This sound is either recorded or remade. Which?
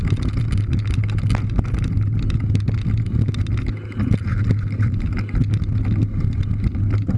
recorded